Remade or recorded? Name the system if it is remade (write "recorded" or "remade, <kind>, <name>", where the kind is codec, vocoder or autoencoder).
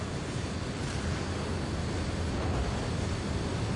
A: recorded